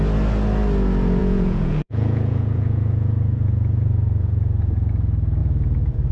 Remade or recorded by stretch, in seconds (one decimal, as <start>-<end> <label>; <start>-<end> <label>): 0.0-1.2 recorded; 1.2-4.9 remade; 4.9-5.4 recorded; 5.4-6.1 remade